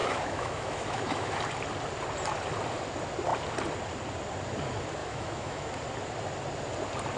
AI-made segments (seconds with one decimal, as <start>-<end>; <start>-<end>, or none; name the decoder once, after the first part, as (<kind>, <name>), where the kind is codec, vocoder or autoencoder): 0.0-1.4 (autoencoder, DAC-VAE); 5.0-5.7